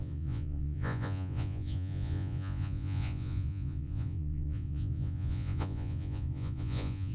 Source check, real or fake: fake